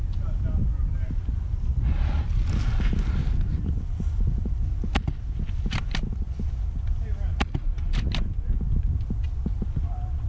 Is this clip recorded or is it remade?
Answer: recorded